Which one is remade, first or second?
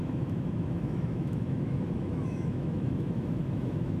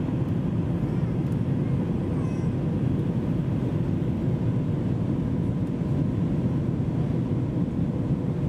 first